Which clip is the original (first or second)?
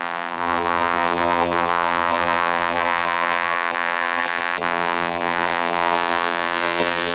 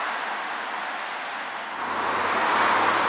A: second